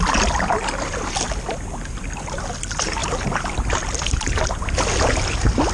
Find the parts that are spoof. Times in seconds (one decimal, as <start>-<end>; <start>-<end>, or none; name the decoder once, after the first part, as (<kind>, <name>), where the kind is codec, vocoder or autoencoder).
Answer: none